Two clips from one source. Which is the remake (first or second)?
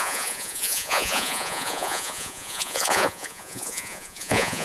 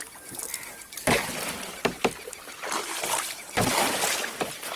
first